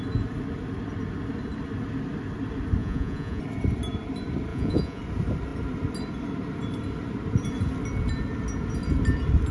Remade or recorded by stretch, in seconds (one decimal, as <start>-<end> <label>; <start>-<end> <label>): 0.0-2.8 recorded; 2.8-3.4 remade; 3.4-4.5 recorded; 4.5-5.0 remade; 5.0-9.5 recorded